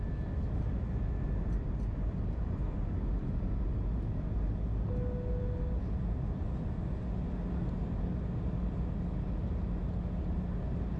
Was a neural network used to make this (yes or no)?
no